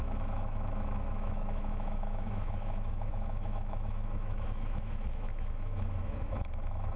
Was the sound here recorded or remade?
remade